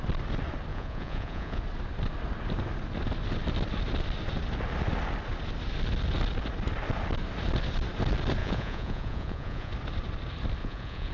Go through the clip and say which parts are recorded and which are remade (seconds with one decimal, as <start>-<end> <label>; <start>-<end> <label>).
0.0-0.7 recorded; 0.7-1.6 remade; 1.6-8.4 recorded; 8.4-9.7 remade; 9.7-10.6 recorded; 10.6-11.1 remade